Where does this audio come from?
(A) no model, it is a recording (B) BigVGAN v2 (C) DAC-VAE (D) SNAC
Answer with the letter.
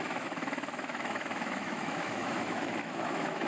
C